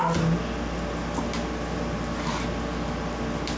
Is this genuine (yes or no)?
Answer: yes